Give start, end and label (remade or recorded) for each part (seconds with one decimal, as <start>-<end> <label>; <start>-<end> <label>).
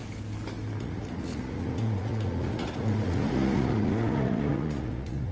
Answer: 0.0-0.8 recorded; 0.8-5.3 remade